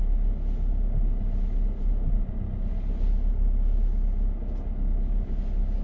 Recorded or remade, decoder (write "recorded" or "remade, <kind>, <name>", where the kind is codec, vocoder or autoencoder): recorded